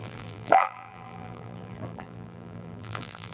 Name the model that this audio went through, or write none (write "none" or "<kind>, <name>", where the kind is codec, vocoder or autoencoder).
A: vocoder, BigVGAN v2